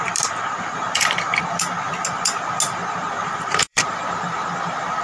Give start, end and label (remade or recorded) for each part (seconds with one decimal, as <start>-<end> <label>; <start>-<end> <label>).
0.0-3.2 recorded; 3.2-4.1 remade; 4.1-5.0 recorded